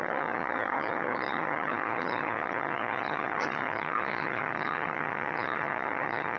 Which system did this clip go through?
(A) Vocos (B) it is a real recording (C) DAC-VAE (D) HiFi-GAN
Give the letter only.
D